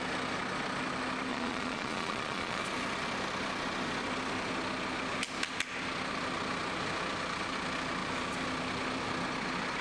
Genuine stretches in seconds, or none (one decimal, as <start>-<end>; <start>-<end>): 0.0-1.3; 2.6-9.8